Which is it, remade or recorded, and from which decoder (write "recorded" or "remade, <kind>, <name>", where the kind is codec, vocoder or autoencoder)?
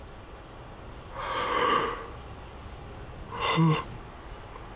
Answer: recorded